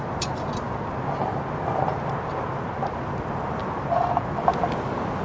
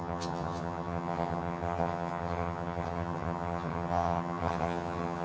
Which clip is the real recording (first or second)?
first